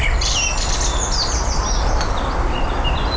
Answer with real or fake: real